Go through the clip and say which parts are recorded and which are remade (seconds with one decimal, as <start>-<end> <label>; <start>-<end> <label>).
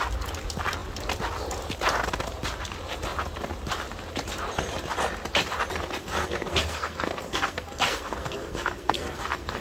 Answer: 0.0-6.0 recorded; 6.0-9.6 remade